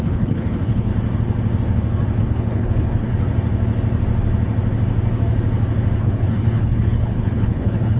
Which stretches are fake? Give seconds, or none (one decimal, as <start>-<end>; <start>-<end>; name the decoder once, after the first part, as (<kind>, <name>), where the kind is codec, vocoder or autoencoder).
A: 0.0-0.9 (codec, HILCodec); 2.2-3.1; 6.0-8.0